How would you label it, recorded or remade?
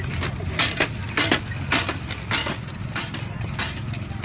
recorded